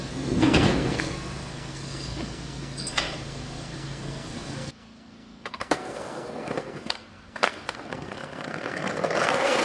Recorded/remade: remade